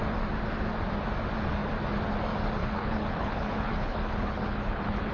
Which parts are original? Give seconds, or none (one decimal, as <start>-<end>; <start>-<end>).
0.0-2.6